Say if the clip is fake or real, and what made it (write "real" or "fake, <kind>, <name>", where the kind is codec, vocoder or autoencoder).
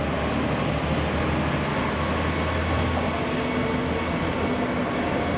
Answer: real